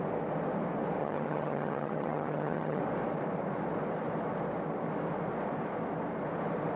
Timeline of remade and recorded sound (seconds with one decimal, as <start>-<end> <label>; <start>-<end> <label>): 0.0-1.0 recorded; 1.0-2.8 remade; 2.8-6.8 recorded